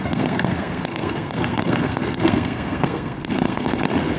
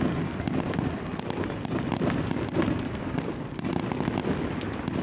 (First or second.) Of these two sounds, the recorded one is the second